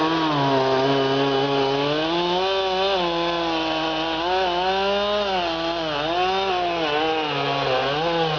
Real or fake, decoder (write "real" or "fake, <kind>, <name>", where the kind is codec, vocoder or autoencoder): real